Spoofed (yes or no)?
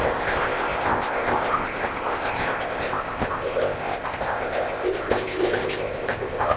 yes